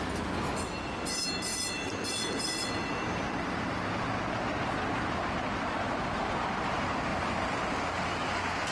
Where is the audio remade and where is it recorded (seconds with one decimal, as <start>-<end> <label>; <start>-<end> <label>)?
0.0-1.5 recorded; 1.5-4.1 remade; 4.1-7.1 recorded; 7.1-7.6 remade; 7.6-8.7 recorded